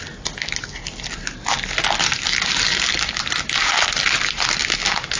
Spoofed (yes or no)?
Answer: no